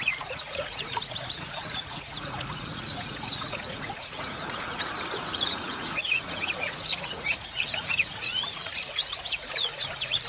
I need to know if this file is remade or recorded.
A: remade